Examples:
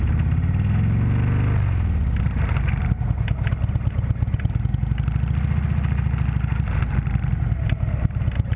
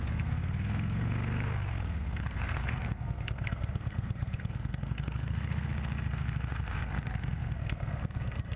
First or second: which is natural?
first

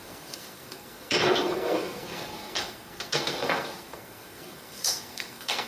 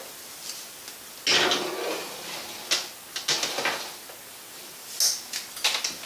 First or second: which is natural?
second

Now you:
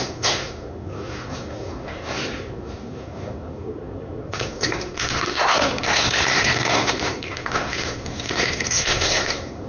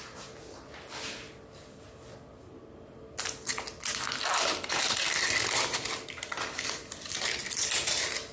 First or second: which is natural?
second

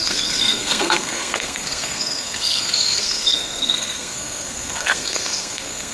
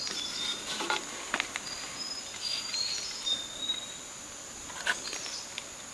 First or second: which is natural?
second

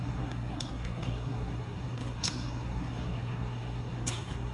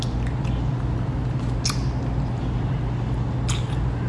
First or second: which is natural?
second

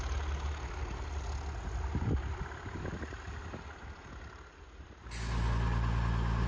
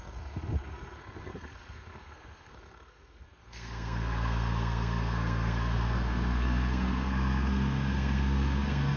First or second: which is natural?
first